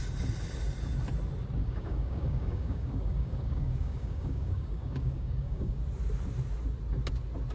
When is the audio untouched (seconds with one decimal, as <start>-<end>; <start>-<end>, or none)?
0.0-1.6; 5.8-7.5